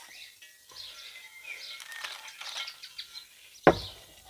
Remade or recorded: recorded